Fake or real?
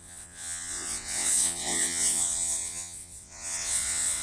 fake